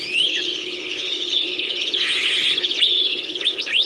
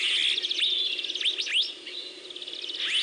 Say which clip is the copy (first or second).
first